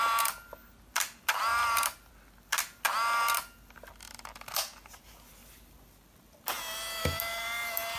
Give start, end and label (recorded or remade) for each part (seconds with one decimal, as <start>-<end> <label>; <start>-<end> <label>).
0.0-8.0 recorded